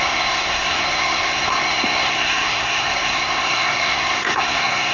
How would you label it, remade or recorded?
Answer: remade